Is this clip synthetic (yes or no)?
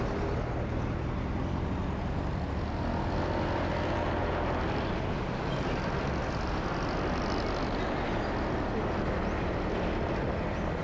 no